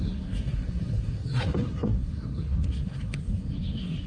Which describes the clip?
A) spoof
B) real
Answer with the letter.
A